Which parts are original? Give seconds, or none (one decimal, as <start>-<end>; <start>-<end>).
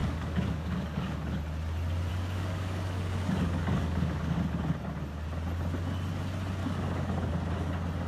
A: 1.4-2.1; 4.4-6.6; 7.3-8.1